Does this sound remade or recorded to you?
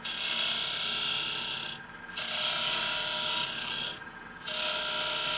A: recorded